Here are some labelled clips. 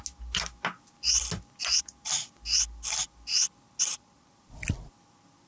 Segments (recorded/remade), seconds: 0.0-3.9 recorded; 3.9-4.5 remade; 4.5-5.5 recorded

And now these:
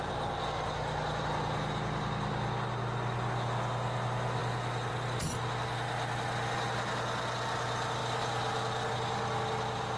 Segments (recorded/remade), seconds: 0.0-10.0 recorded

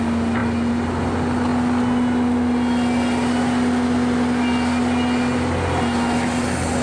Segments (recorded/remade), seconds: 0.0-6.8 recorded

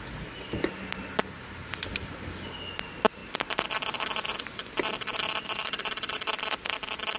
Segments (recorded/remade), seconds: 0.0-7.2 recorded

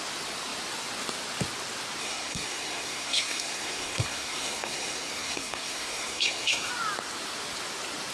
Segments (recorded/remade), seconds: 0.0-2.0 recorded; 2.0-6.7 remade; 6.7-8.1 recorded

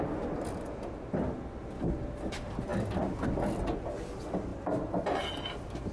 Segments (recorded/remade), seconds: 0.0-5.9 recorded

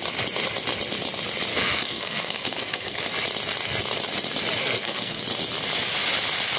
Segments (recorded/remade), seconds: 0.0-1.5 recorded; 1.5-3.0 remade; 3.0-4.6 recorded; 4.6-5.2 remade; 5.2-6.6 recorded